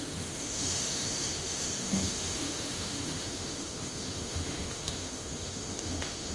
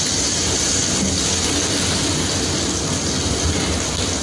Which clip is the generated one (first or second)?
first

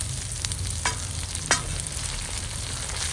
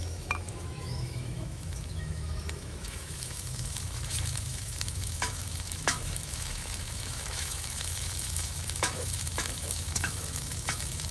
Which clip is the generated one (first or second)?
second